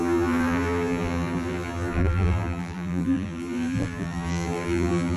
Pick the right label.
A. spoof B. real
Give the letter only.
A